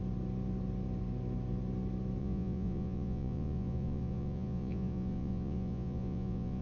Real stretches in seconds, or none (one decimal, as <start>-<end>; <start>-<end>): 0.0-2.2